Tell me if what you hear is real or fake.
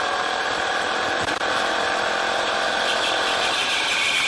fake